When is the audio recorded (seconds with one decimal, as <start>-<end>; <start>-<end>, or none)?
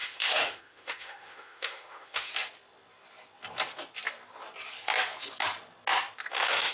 2.3-6.3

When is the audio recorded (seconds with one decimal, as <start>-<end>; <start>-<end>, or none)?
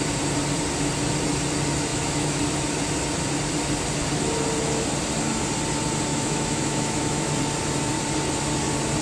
0.0-1.9; 2.4-6.1; 7.3-9.0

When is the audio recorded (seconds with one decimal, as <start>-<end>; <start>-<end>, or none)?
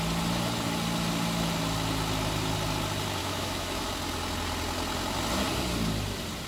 0.0-3.2; 3.9-6.5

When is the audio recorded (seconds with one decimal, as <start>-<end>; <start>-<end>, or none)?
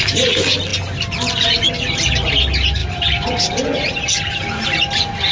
0.0-5.3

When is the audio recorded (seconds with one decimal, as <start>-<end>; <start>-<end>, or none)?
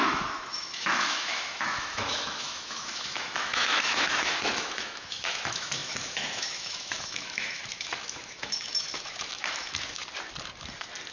10.0-11.1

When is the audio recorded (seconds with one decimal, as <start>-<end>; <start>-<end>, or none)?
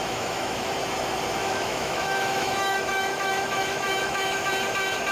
0.7-1.4; 4.5-5.1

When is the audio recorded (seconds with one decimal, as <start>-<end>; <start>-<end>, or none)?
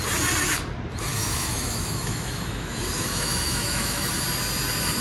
0.0-1.1; 4.1-5.0